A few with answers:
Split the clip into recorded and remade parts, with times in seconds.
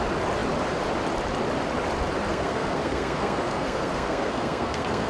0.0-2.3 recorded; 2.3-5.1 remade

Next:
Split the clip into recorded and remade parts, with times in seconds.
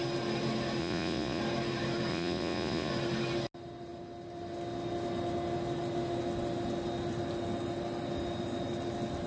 0.0-0.8 recorded; 0.8-1.4 remade; 1.4-2.1 recorded; 2.1-2.9 remade; 2.9-9.3 recorded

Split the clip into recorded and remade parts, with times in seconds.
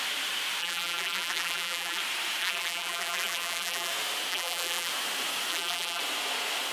0.0-0.6 recorded; 0.6-2.0 remade; 2.0-2.4 recorded; 2.4-3.9 remade; 3.9-4.3 recorded; 4.3-4.9 remade; 4.9-5.5 recorded; 5.5-6.0 remade; 6.0-6.7 recorded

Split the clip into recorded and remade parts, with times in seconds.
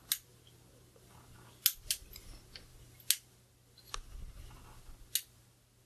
0.0-5.9 recorded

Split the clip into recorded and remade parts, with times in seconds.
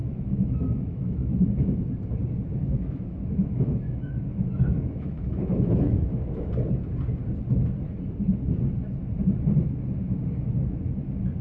0.0-1.5 remade; 1.5-2.6 recorded; 2.6-6.5 remade; 6.5-11.4 recorded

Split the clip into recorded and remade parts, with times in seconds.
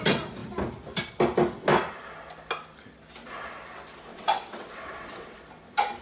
0.0-4.1 recorded; 4.1-5.4 remade; 5.4-6.0 recorded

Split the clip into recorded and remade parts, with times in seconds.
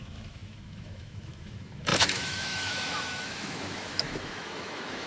0.0-5.1 remade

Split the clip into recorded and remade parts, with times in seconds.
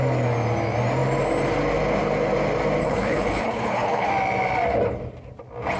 0.0-2.8 recorded; 2.8-4.1 remade; 4.1-5.8 recorded